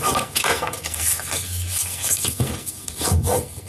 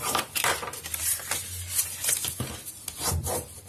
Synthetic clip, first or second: first